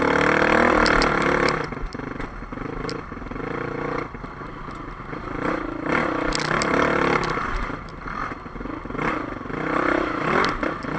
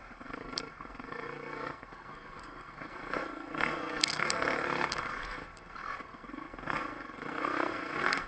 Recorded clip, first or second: first